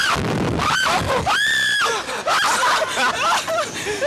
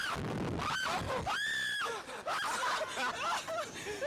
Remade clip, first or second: first